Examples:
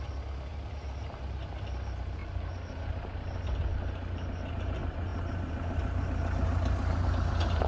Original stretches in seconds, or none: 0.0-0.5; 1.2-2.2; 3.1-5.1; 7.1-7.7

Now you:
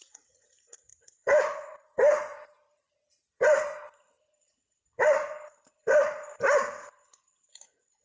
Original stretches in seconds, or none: none

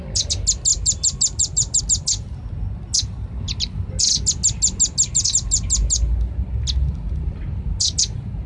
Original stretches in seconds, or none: 0.0-0.7; 1.8-8.5

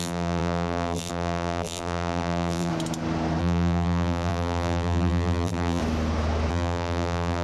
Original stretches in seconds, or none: 2.7-3.4; 5.8-6.5

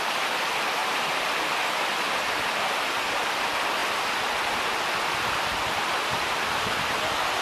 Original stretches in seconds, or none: none

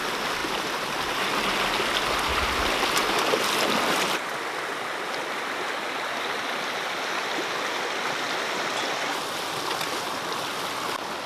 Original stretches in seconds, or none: 0.0-11.3